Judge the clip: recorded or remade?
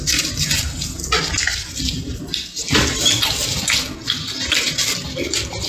recorded